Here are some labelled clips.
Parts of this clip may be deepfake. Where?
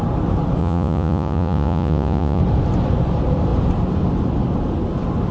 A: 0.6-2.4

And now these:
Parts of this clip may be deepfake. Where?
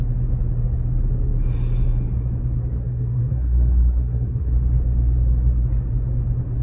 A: 2.8-4.5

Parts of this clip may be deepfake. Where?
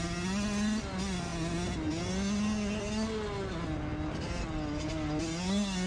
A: none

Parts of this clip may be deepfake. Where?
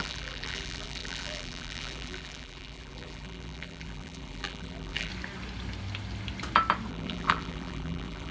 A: 0.0-5.1; 6.9-8.3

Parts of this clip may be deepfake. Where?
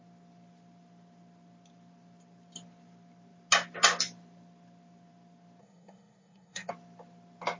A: 5.6-6.7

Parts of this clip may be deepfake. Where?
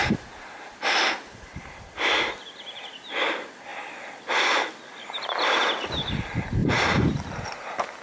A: 0.0-1.6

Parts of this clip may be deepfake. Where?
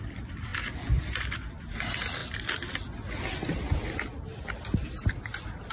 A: none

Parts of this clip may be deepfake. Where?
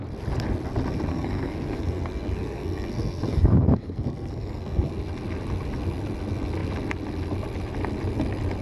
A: 1.1-4.9